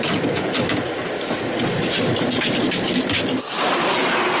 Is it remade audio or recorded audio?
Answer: recorded